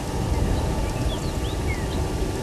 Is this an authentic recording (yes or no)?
yes